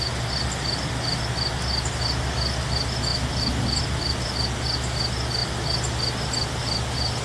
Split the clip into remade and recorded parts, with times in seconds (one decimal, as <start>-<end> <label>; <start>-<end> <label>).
0.0-7.2 recorded